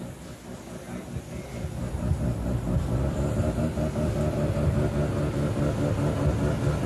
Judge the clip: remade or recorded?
recorded